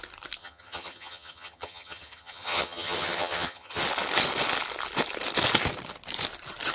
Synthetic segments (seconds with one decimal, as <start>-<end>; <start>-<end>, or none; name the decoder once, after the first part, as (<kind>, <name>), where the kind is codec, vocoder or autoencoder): 0.4-3.8 (vocoder, HiFi-GAN)

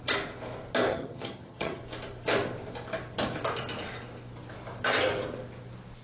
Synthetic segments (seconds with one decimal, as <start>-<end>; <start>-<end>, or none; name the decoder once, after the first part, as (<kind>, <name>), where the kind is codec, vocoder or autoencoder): 0.9-1.8 (vocoder, HiFi-GAN)

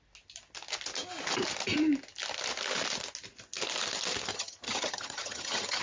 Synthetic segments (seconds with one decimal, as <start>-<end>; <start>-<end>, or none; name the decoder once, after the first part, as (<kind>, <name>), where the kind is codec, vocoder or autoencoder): 4.3-5.8 (vocoder, HiFi-GAN)